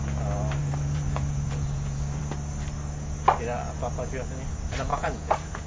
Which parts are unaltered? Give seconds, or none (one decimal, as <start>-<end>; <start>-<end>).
0.0-0.6; 2.2-4.9